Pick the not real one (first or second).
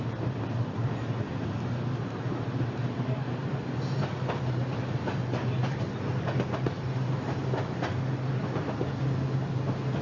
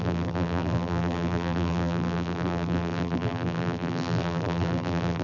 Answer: second